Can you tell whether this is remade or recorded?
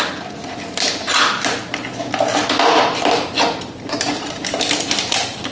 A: recorded